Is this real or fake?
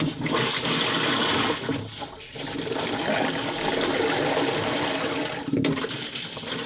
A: real